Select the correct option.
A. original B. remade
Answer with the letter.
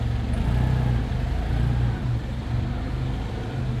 A